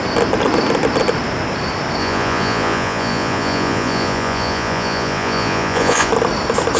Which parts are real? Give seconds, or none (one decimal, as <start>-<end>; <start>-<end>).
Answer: 0.0-2.0; 6.1-6.8